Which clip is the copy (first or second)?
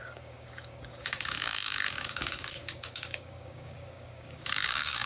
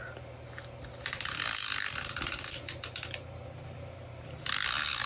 first